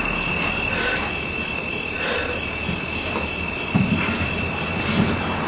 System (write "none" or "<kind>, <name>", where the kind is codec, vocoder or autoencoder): none